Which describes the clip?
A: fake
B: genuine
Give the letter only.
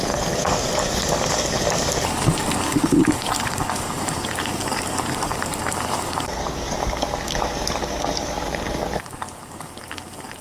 A